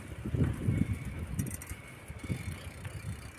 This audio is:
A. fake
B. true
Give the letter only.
B